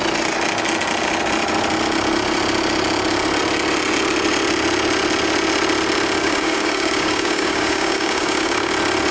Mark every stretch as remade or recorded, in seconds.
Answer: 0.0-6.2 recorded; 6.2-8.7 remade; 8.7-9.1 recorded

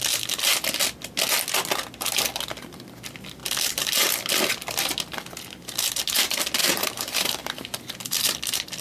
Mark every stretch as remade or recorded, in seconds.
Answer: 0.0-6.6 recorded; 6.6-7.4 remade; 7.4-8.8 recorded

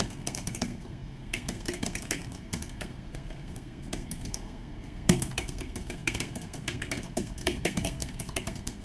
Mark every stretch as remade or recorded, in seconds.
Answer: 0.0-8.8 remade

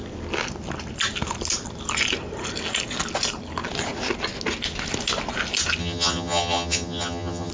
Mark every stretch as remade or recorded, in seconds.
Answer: 0.0-5.8 recorded; 5.8-7.5 remade

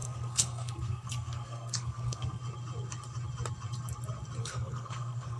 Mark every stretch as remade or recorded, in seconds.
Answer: 0.0-2.4 remade; 2.4-4.4 recorded; 4.4-5.4 remade

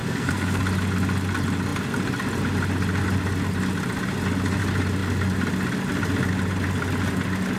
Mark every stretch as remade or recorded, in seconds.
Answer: 0.0-0.6 remade; 0.6-7.6 recorded